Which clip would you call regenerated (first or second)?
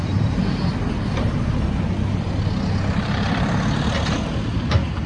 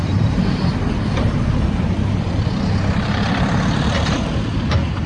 second